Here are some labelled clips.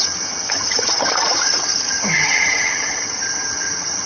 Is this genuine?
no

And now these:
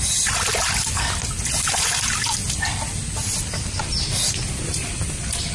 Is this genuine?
yes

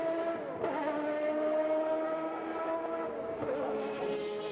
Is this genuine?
yes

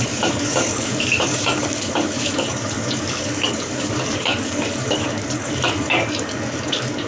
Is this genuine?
no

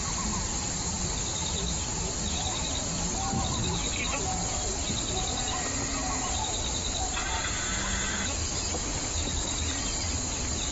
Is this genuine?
yes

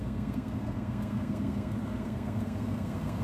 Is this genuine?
no